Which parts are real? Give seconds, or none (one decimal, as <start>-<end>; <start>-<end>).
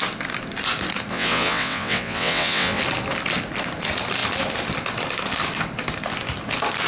0.0-1.1; 2.8-6.9